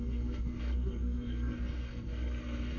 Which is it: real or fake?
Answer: fake